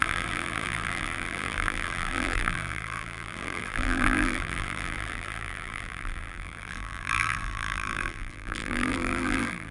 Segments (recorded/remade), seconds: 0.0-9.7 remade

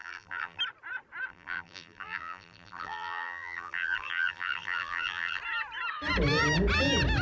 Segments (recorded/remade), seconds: 0.0-0.6 remade; 0.6-1.3 recorded; 1.3-5.4 remade; 5.4-7.2 recorded

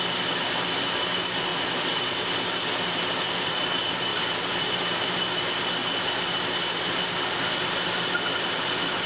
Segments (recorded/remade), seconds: 0.0-4.1 recorded; 4.1-5.2 remade; 5.2-9.1 recorded